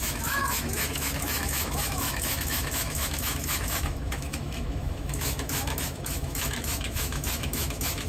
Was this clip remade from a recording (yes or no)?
yes